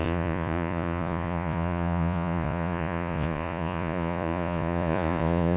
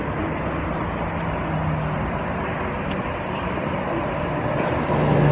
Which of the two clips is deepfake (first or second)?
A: first